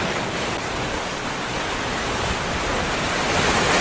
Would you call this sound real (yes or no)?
yes